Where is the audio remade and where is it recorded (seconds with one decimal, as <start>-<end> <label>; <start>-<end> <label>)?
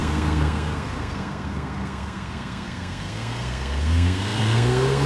0.0-5.1 remade